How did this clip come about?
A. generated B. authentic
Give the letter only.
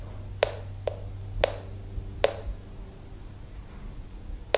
B